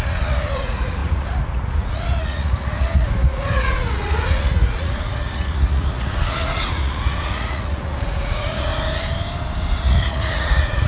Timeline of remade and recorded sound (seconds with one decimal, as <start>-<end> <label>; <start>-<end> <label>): 0.0-8.7 remade; 8.7-9.8 recorded; 9.8-10.9 remade